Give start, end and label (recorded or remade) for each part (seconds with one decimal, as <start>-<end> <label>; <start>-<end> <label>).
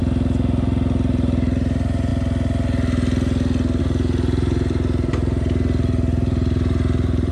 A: 0.0-2.1 remade; 2.1-3.8 recorded; 3.8-7.3 remade